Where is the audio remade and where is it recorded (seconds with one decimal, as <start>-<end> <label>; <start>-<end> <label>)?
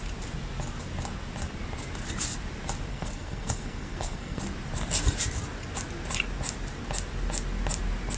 0.0-2.9 recorded; 2.9-4.4 remade; 4.4-8.2 recorded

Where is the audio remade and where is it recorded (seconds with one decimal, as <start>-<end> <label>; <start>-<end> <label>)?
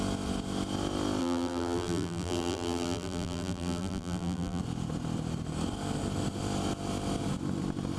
0.0-1.2 recorded; 1.2-4.6 remade; 4.6-8.0 recorded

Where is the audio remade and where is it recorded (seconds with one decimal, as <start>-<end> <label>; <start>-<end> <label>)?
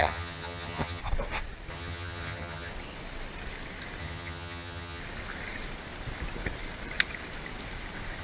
0.0-1.0 remade; 1.0-1.7 recorded; 1.7-2.7 remade; 2.7-4.0 recorded; 4.0-5.0 remade; 5.0-8.2 recorded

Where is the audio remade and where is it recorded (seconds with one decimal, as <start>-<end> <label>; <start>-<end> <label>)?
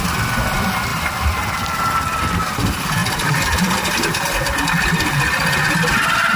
0.0-0.9 recorded; 0.9-2.4 remade; 2.4-3.0 recorded; 3.0-4.2 remade; 4.2-6.4 recorded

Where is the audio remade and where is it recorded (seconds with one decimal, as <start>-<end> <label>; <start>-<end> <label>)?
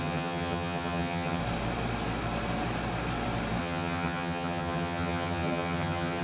0.0-1.4 remade; 1.4-3.6 recorded; 3.6-6.2 remade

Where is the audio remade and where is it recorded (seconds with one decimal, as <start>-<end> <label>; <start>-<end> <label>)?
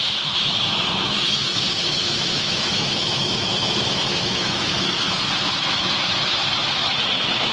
0.0-7.5 remade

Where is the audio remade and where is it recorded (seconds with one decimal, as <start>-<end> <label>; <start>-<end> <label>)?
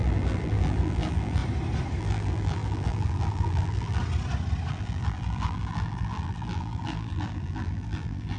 0.0-1.4 remade; 1.4-2.0 recorded; 2.0-4.0 remade; 4.0-4.7 recorded; 4.7-8.4 remade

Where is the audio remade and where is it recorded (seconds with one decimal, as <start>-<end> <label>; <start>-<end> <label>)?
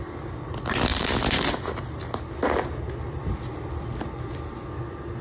0.0-0.9 recorded; 0.9-2.3 remade; 2.3-5.2 recorded